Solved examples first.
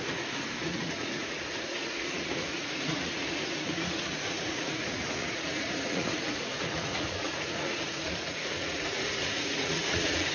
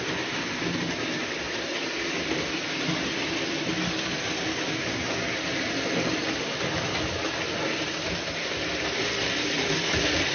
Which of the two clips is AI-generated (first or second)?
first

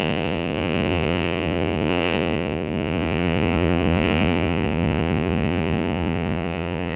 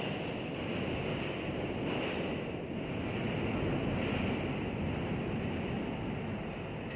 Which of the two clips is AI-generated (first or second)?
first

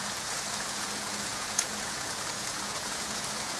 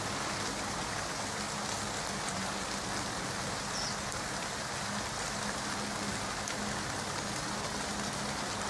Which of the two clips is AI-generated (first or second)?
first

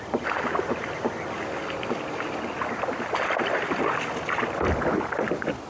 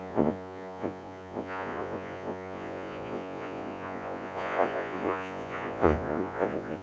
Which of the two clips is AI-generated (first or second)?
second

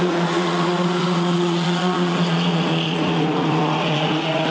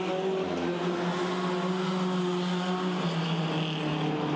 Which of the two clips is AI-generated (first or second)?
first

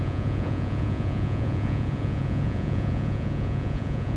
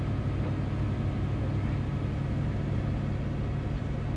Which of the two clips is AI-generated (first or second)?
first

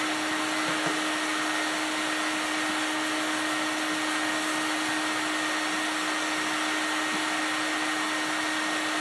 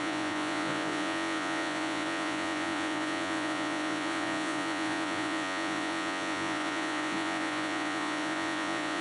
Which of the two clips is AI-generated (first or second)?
second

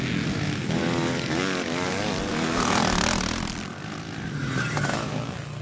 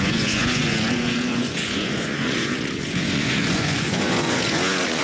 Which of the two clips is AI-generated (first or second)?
second